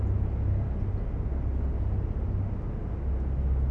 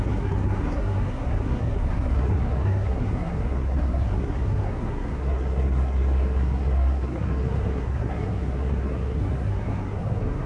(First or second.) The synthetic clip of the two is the second